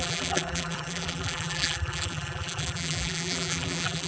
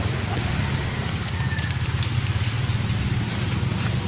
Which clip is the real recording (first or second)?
second